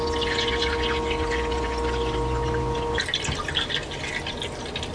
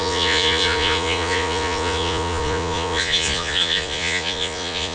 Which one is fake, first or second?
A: second